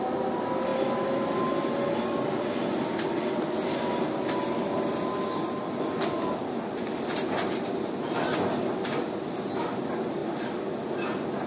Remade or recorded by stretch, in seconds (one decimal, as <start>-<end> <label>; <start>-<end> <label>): 0.0-11.5 recorded